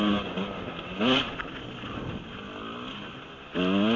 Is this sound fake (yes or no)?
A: no